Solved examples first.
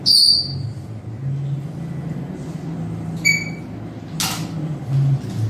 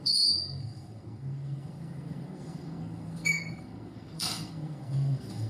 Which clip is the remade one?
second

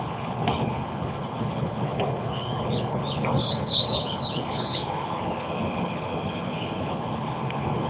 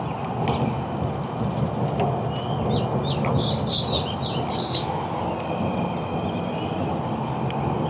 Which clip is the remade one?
first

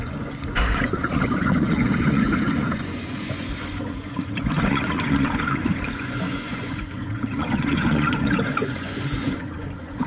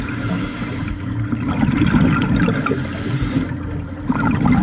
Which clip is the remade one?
first